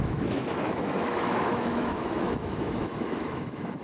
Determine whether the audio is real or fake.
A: fake